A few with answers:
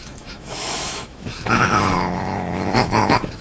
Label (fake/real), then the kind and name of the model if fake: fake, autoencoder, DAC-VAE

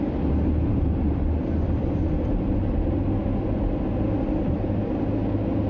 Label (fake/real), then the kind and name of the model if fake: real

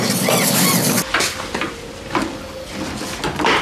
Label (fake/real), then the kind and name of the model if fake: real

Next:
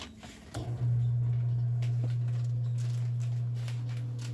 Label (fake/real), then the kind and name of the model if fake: real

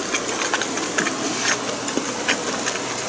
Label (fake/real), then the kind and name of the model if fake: real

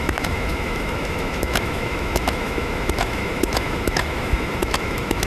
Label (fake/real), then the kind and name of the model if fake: fake, autoencoder, DAC-VAE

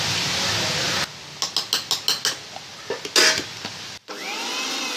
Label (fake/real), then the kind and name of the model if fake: real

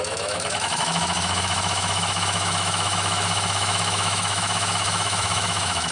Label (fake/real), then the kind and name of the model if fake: fake, autoencoder, DAC-VAE